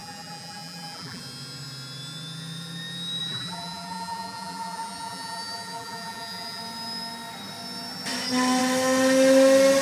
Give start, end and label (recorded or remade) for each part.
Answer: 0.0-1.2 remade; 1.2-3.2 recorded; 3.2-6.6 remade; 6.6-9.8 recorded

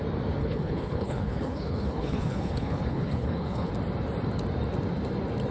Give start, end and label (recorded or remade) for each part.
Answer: 0.0-0.4 recorded; 0.4-3.7 remade; 3.7-5.5 recorded

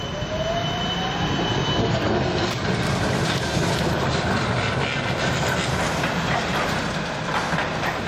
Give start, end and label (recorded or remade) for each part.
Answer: 0.0-1.8 recorded; 1.8-2.5 remade; 2.5-8.1 recorded

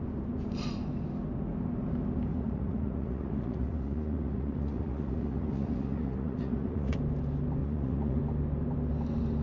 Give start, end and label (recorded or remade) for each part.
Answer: 0.0-2.3 recorded; 2.3-7.0 remade; 7.0-7.6 recorded; 7.6-8.2 remade; 8.2-9.4 recorded

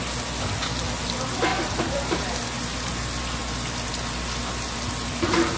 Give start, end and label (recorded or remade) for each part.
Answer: 0.0-1.5 recorded; 1.5-2.2 remade; 2.2-5.6 recorded

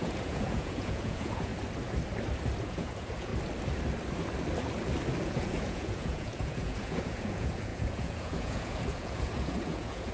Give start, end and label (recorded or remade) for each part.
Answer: 0.0-1.5 remade; 1.5-2.6 recorded; 2.6-3.3 remade; 3.3-5.2 recorded; 5.2-10.1 remade

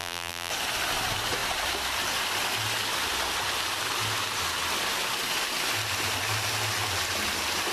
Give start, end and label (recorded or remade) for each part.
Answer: 0.0-0.5 remade; 0.5-7.7 recorded

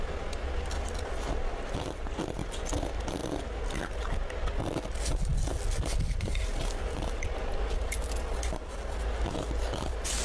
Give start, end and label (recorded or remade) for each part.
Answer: 0.0-10.2 recorded